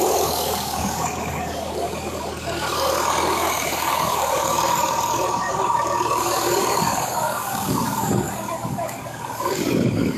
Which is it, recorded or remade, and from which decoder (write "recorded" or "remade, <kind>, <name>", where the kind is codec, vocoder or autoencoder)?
remade, codec, DAC